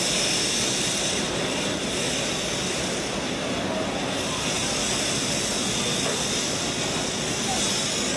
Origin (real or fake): real